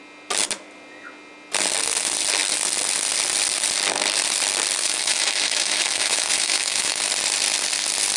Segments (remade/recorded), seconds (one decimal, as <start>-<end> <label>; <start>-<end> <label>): 0.0-4.8 recorded; 4.8-7.0 remade; 7.0-8.2 recorded